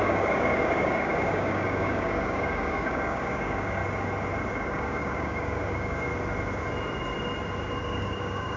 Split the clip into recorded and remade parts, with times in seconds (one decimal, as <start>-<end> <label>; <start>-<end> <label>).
0.0-3.8 remade; 3.8-4.5 recorded; 4.5-6.1 remade; 6.1-7.8 recorded; 7.8-8.6 remade